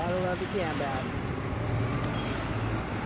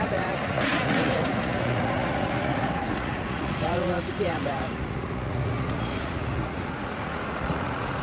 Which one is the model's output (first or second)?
second